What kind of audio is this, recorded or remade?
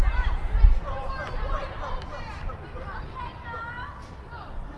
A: recorded